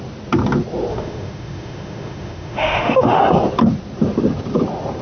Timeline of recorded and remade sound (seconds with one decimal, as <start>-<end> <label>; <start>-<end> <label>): 0.0-0.9 recorded; 0.9-3.2 remade; 3.2-5.0 recorded